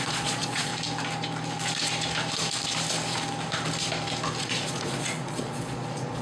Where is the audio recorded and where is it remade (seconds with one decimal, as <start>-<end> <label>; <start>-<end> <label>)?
0.0-0.7 remade; 0.7-4.4 recorded; 4.4-6.2 remade